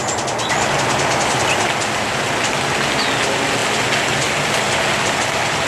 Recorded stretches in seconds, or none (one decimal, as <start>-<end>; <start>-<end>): 0.0-5.7